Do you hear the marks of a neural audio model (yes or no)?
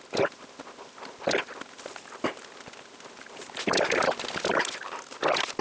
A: no